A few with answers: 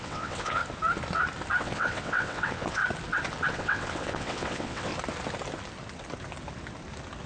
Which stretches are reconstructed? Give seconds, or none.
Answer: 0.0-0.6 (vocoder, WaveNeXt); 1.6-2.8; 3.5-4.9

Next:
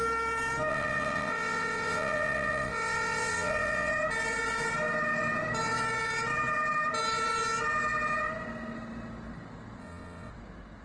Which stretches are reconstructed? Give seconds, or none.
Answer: 0.7-3.9 (vocoder, WaveNeXt); 9.8-10.3